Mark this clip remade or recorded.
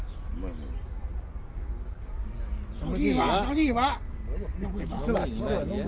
recorded